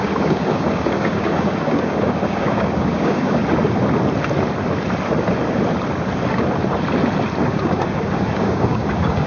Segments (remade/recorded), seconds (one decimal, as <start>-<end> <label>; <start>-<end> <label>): 0.0-3.4 remade; 3.4-7.5 recorded; 7.5-9.3 remade